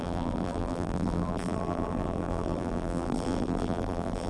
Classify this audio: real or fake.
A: fake